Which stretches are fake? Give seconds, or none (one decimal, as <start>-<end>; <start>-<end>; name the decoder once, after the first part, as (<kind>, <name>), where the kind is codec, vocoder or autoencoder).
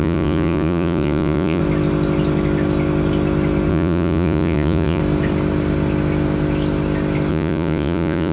0.0-1.6 (vocoder, Vocos); 3.7-5.0; 7.3-8.3